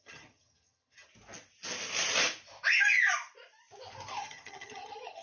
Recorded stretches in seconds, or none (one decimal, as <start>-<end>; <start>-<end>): 1.1-4.2